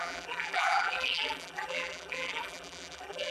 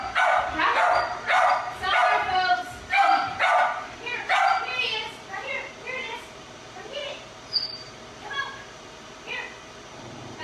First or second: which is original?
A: second